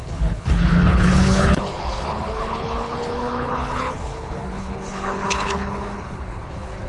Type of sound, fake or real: fake